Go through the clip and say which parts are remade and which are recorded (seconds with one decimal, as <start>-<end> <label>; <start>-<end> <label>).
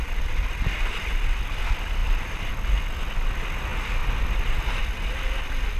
0.0-2.0 recorded; 2.0-2.5 remade; 2.5-4.0 recorded; 4.0-4.8 remade; 4.8-5.8 recorded